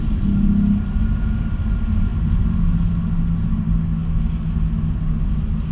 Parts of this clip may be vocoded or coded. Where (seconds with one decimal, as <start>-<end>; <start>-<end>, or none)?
none